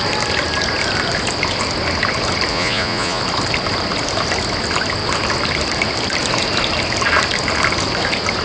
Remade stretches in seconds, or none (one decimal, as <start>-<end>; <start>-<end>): 2.5-3.2